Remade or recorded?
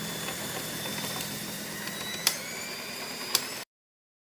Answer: remade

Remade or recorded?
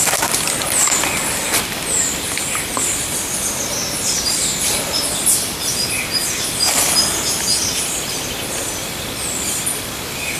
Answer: recorded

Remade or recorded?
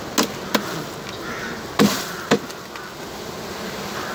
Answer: recorded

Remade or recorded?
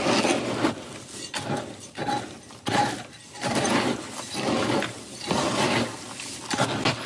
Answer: recorded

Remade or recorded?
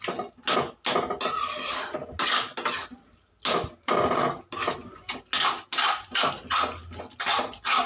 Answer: recorded